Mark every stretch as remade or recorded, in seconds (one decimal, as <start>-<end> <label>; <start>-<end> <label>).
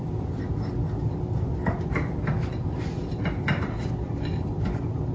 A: 0.0-1.5 recorded; 1.5-4.5 remade; 4.5-5.1 recorded